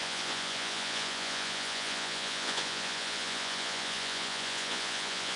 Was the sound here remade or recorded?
remade